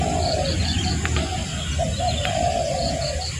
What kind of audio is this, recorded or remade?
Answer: recorded